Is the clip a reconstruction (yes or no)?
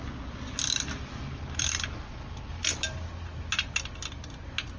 no